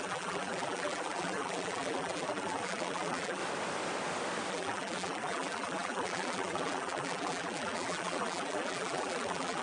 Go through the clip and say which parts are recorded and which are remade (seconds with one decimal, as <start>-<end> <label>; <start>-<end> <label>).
0.0-3.4 remade; 3.4-4.5 recorded; 4.5-9.6 remade